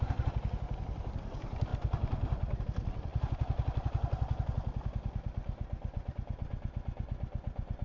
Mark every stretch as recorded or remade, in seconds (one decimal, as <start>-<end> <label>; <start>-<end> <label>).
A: 0.0-7.8 recorded